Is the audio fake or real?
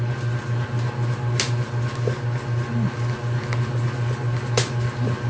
real